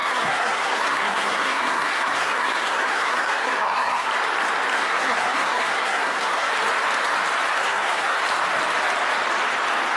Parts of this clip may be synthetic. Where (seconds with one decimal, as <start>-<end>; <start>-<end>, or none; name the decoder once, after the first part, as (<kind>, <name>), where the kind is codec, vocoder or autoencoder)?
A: 0.0-4.1 (codec, SNAC); 4.7-6.5; 7.6-8.2